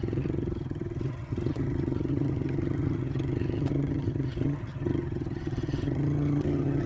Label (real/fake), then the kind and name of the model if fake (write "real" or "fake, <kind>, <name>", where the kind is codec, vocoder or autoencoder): fake, vocoder, HiFi-GAN